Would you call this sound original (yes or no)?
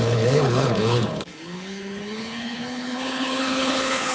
no